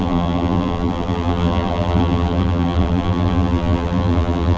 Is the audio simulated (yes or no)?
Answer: yes